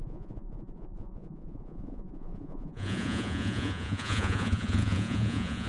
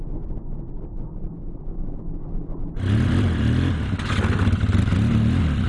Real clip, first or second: second